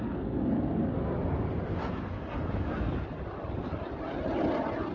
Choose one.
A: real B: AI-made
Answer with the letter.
A